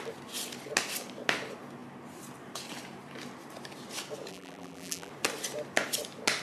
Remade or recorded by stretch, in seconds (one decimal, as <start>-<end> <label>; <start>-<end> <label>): 0.0-4.3 recorded; 4.3-5.1 remade; 5.1-6.4 recorded